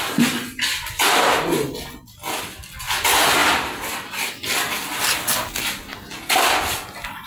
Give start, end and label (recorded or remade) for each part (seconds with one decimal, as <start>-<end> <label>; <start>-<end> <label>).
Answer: 0.0-3.4 recorded; 3.4-4.3 remade; 4.3-7.3 recorded